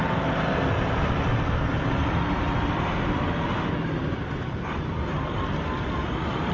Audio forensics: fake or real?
real